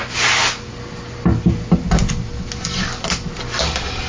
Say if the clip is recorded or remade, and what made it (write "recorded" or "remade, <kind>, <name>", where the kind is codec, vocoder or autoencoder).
recorded